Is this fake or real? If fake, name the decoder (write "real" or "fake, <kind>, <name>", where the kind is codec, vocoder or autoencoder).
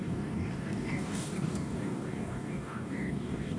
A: fake, codec, DAC